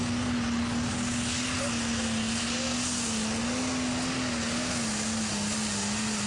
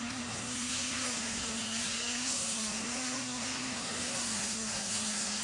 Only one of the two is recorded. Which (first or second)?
first